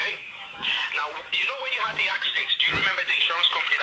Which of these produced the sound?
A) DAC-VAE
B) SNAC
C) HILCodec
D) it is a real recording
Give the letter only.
A